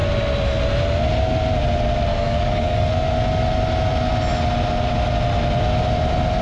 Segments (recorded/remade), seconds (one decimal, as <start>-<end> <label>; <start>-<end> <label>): 0.0-2.1 recorded; 2.1-2.9 remade; 2.9-6.4 recorded

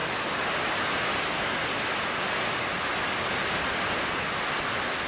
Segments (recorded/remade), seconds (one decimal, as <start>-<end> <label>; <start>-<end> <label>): 0.0-5.1 recorded